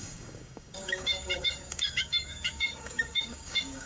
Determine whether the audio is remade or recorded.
remade